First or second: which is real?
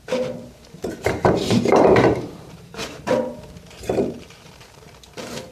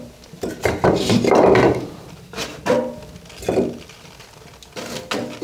second